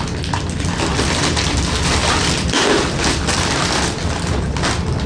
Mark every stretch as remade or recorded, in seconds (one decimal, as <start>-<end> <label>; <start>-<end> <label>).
0.0-0.9 recorded; 0.9-1.5 remade; 1.5-2.0 recorded; 2.0-3.2 remade; 3.2-5.1 recorded